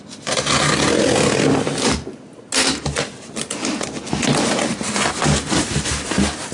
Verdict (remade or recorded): recorded